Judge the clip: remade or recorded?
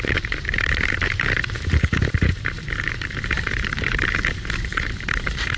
remade